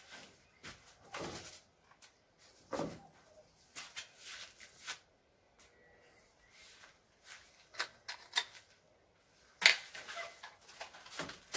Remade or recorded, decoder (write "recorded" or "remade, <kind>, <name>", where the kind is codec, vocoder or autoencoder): recorded